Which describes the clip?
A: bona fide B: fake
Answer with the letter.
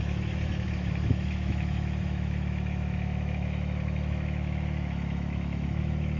B